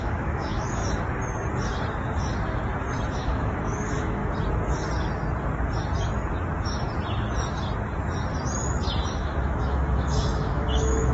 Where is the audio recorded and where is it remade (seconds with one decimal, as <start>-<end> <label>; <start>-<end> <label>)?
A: 0.0-0.8 remade; 0.8-3.1 recorded; 3.1-4.2 remade; 4.2-9.1 recorded; 9.1-11.1 remade